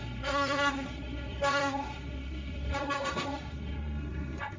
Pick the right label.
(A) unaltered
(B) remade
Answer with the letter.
B